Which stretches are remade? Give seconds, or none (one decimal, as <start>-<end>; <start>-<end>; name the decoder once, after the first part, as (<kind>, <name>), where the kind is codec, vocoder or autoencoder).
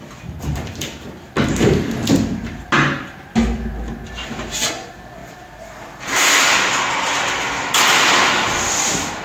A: 4.2-4.7 (vocoder, BigVGAN v2)